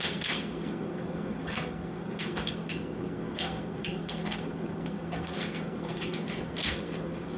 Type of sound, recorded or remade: remade